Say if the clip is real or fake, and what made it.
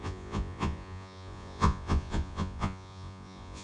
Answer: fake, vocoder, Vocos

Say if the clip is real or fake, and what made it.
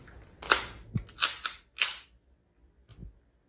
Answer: real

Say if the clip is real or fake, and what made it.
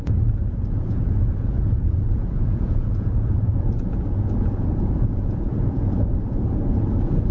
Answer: fake, vocoder, Vocos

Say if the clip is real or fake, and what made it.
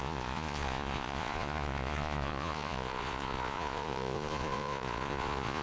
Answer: fake, vocoder, Vocos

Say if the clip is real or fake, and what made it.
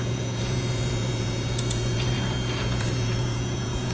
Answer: fake, vocoder, Vocos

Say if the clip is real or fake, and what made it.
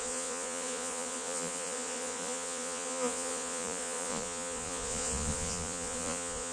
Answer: fake, vocoder, Vocos